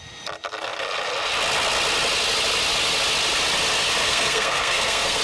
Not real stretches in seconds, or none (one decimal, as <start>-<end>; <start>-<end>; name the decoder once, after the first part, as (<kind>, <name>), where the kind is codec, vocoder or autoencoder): 4.0-5.2 (codec, SNAC)